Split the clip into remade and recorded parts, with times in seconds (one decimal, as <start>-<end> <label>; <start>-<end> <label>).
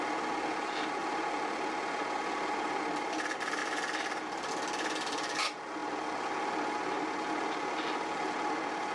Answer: 0.0-8.9 recorded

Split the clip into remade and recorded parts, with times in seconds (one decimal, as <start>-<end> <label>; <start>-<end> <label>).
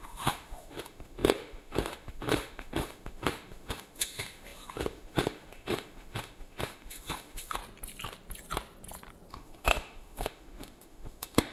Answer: 0.0-7.6 remade; 7.6-9.3 recorded; 9.3-11.5 remade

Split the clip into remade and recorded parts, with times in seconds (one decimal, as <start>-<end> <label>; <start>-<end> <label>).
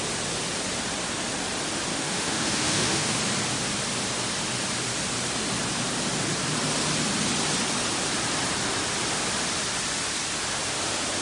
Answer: 0.0-1.9 recorded; 1.9-3.2 remade; 3.2-11.2 recorded